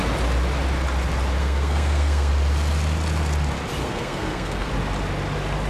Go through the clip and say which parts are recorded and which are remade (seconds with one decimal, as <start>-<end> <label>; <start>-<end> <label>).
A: 0.0-1.4 recorded; 1.4-2.3 remade; 2.3-3.8 recorded; 3.8-4.7 remade; 4.7-5.7 recorded